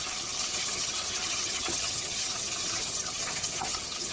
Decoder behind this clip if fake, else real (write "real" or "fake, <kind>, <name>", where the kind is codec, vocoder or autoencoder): fake, vocoder, HiFi-GAN